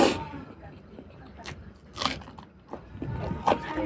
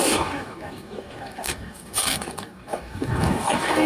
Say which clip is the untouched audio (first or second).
first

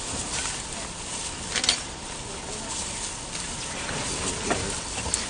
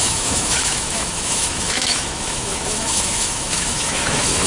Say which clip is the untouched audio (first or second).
first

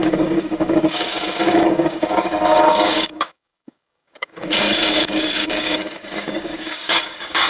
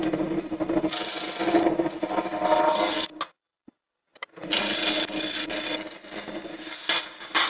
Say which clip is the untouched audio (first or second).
second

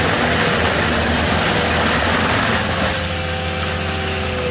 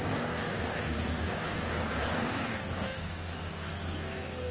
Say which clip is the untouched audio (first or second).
first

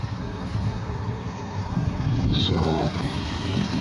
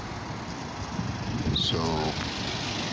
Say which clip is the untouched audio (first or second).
second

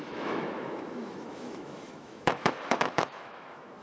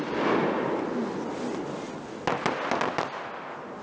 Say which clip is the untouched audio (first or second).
second